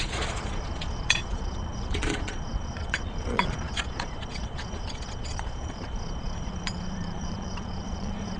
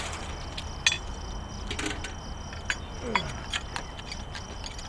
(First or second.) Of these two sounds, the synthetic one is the first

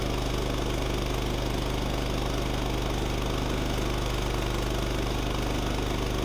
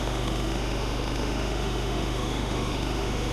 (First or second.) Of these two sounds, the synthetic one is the second